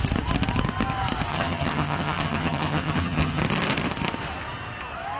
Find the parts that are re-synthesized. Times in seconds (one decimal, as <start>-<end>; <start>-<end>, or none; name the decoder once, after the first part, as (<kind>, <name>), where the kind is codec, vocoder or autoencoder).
1.3-3.4 (vocoder, HiFi-GAN)